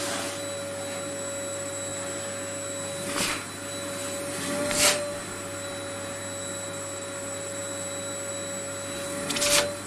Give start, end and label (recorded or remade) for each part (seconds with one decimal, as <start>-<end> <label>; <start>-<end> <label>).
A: 0.0-9.9 recorded